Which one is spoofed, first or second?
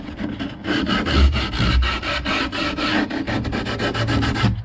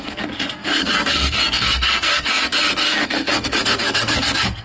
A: second